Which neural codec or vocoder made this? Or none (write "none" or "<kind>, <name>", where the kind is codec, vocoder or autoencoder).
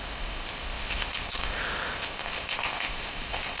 codec, ZipCodec